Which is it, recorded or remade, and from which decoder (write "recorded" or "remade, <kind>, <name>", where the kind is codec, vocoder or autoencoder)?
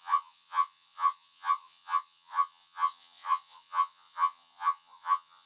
remade, vocoder, Vocos